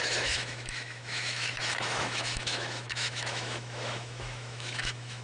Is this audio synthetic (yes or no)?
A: yes